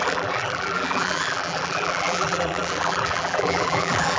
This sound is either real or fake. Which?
fake